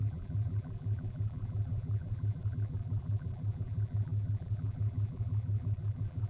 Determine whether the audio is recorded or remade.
remade